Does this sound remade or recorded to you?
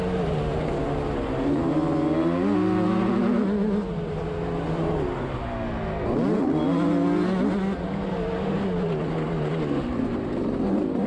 recorded